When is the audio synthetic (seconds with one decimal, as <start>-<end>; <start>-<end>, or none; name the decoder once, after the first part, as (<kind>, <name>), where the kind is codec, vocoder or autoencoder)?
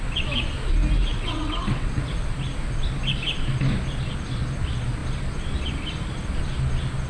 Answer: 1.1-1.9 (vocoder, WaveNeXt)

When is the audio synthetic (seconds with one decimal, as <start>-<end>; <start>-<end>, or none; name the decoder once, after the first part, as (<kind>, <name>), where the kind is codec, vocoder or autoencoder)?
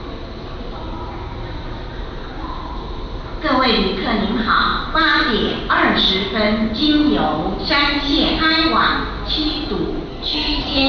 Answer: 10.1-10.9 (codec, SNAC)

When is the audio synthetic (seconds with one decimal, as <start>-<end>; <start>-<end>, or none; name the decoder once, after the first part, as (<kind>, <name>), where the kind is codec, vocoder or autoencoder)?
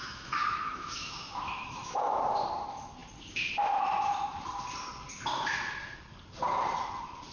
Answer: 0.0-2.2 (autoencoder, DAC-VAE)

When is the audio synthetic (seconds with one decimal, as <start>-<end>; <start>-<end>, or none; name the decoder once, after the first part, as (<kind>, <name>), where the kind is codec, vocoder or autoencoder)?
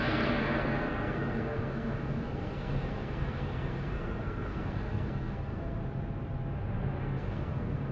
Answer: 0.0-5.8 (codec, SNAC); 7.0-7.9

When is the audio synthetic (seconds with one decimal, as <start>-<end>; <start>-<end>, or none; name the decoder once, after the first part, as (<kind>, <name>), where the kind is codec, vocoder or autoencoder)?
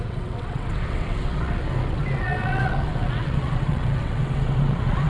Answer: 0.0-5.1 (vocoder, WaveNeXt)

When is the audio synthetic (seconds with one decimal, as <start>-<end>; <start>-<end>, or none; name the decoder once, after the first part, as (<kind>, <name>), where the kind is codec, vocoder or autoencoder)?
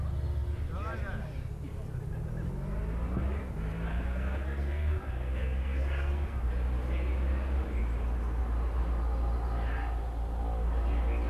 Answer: 3.9-6.5 (codec, SNAC)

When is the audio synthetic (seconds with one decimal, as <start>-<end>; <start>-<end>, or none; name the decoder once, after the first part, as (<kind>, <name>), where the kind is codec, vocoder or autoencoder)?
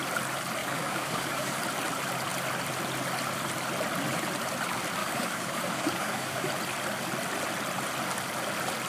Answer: 0.6-1.6 (codec, DAC); 5.0-6.5